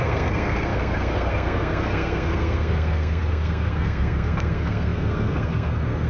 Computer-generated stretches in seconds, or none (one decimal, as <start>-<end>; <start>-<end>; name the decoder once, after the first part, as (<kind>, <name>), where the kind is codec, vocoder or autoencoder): 0.0-6.1 (codec, SNAC)